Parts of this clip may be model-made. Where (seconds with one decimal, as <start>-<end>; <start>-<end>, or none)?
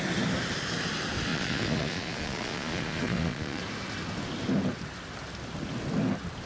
1.3-3.6